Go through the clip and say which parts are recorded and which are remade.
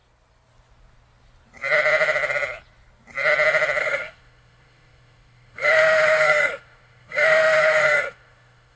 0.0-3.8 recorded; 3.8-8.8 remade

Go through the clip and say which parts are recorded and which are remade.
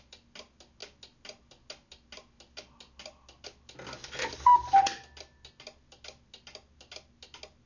0.0-7.7 recorded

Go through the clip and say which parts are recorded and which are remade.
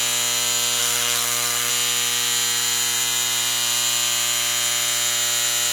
0.0-0.8 recorded; 0.8-1.7 remade; 1.7-5.7 recorded